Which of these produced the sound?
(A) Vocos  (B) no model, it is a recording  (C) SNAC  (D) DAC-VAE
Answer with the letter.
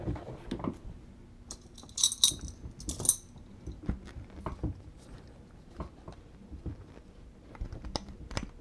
B